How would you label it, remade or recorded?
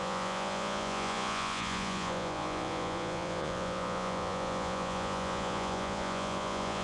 remade